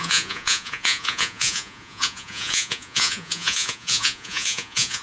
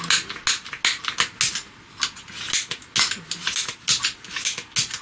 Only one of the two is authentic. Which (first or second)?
second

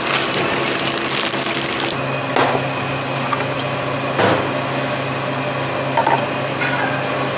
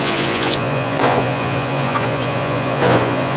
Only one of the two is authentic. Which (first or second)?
first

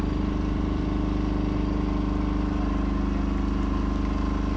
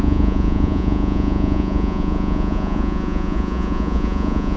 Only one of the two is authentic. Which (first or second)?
first